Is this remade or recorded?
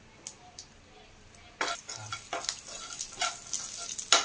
recorded